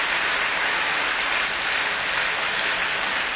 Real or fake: real